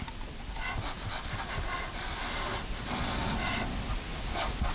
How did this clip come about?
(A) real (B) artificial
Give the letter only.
A